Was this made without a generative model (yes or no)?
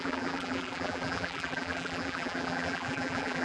no